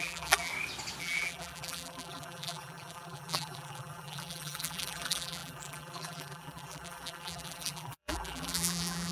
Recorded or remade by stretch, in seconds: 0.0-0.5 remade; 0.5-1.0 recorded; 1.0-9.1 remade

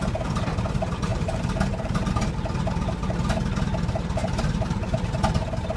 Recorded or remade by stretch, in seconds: 0.0-1.1 recorded; 1.1-2.1 remade; 2.1-4.2 recorded; 4.2-5.1 remade; 5.1-5.8 recorded

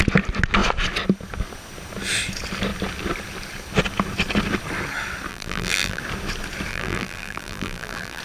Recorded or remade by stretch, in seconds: 0.0-5.3 recorded; 5.3-6.0 remade; 6.0-6.7 recorded; 6.7-8.2 remade

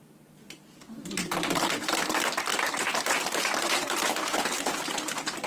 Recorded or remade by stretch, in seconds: 0.0-2.5 recorded; 2.5-4.4 remade; 4.4-5.5 recorded